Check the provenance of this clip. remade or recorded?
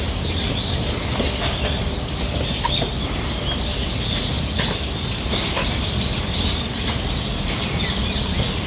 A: recorded